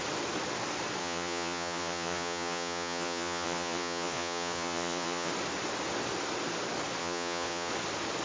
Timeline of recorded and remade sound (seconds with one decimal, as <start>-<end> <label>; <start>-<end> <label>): 0.0-1.0 recorded; 1.0-5.3 remade; 5.3-7.0 recorded; 7.0-7.7 remade; 7.7-8.2 recorded